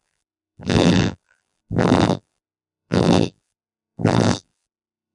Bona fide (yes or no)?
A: no